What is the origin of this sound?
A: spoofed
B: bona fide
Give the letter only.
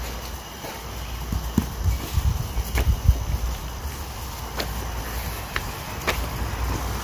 B